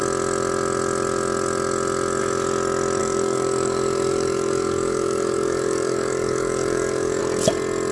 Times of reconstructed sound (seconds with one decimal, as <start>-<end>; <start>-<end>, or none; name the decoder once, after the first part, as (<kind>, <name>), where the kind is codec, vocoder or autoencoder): 3.0-7.2 (codec, DAC)